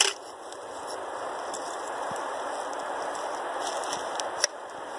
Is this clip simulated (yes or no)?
no